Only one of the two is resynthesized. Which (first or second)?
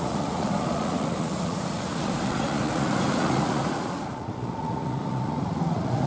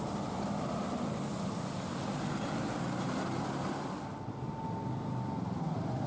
first